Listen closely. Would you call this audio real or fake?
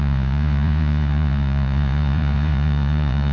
fake